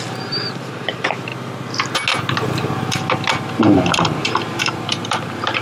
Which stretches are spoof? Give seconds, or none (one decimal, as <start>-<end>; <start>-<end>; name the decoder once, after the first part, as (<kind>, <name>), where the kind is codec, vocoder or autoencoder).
0.0-1.3 (vocoder, BigVGAN v2); 3.6-5.6